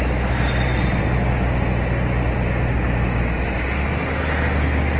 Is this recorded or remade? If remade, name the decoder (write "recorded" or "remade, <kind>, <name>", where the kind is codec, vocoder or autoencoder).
recorded